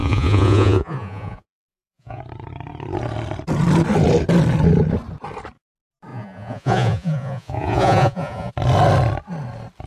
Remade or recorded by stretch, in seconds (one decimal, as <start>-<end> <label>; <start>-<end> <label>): 0.0-2.2 remade; 2.2-6.1 recorded; 6.1-8.5 remade; 8.5-9.9 recorded